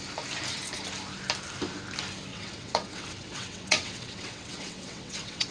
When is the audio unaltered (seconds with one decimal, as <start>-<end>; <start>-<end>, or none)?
0.0-2.3